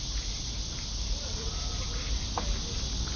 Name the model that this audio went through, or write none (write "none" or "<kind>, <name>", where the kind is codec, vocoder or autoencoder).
none